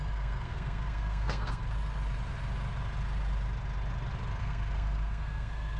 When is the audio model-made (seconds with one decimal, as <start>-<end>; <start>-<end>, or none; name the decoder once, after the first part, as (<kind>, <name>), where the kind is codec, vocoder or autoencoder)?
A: 0.0-1.6 (codec, SNAC); 4.4-5.8